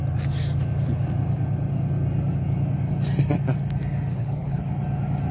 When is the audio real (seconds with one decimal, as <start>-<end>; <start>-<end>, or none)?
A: 0.0-4.1; 4.6-5.3